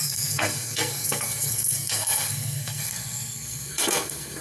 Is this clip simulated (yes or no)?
yes